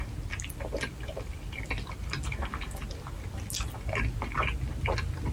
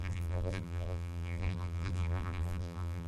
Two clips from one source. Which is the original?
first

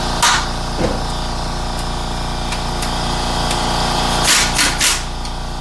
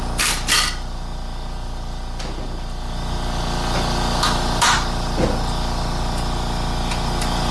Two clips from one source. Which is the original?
first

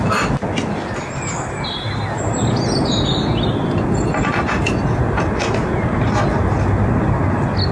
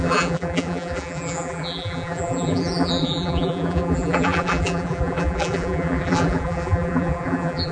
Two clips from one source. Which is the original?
first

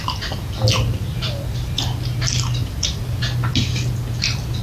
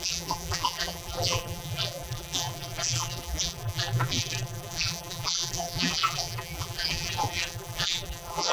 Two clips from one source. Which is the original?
first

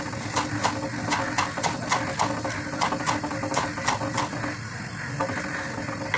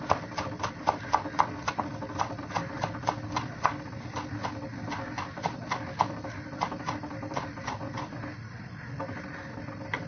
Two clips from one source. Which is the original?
first